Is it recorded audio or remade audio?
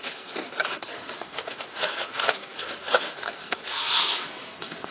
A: remade